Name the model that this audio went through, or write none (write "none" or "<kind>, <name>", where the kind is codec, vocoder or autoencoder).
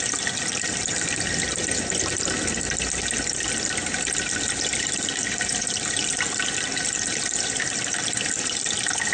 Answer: none